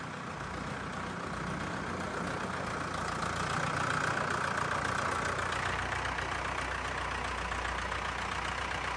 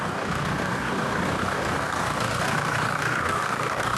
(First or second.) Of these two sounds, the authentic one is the first